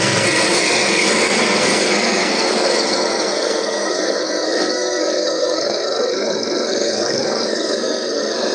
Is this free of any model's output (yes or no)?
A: no